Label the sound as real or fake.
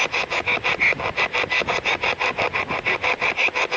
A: real